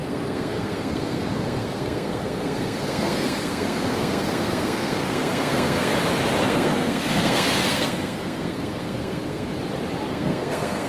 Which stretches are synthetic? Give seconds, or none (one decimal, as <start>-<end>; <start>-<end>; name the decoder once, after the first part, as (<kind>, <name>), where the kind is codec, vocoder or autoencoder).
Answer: 0.0-5.9 (codec, SNAC); 6.4-9.5; 10.1-10.9